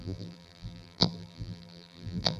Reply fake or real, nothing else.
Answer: fake